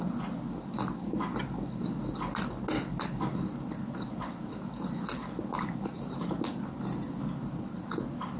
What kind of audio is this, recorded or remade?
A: recorded